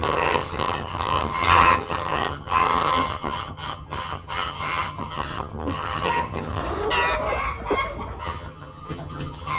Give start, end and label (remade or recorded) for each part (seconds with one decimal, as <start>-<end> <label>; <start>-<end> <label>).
0.0-6.6 remade; 6.6-8.2 recorded; 8.2-9.6 remade